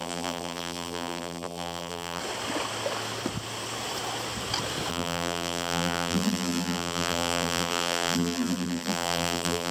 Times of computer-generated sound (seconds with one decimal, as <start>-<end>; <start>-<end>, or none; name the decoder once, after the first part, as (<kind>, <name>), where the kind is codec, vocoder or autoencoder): 0.0-2.2 (vocoder, BigVGAN v2); 4.9-9.7